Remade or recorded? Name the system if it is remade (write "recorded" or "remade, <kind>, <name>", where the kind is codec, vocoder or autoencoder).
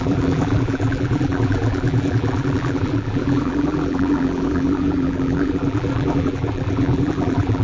remade, vocoder, BigVGAN v2